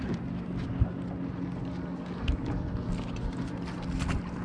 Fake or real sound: real